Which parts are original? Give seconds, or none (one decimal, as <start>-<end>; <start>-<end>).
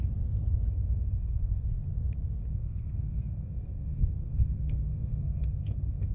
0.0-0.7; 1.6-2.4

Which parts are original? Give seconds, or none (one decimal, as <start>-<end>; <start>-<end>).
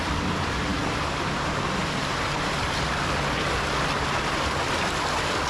0.0-5.5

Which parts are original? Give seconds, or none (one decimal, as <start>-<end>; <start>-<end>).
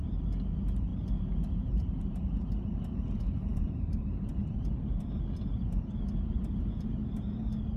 none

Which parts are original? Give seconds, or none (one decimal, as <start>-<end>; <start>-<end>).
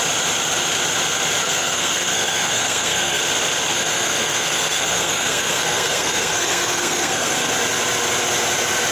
0.0-1.4; 3.2-3.7; 7.5-8.9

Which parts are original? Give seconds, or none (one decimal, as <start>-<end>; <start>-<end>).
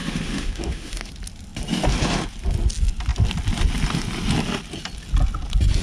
1.1-5.8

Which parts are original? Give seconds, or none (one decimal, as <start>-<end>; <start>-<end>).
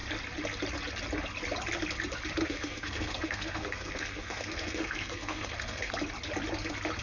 0.0-2.4; 5.9-7.0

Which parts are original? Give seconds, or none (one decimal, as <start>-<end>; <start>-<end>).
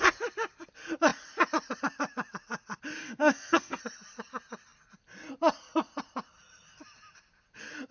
0.0-3.0; 3.8-7.9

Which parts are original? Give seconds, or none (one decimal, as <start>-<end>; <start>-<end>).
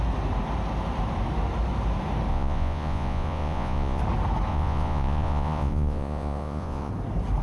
0.0-2.3; 4.0-4.5; 6.9-7.4